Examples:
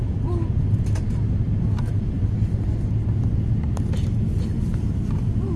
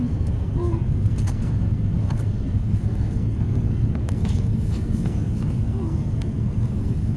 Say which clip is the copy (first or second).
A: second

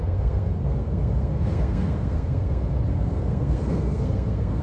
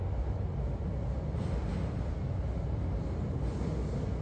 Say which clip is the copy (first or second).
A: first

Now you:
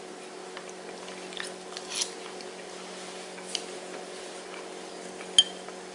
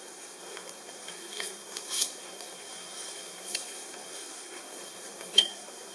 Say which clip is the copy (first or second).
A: second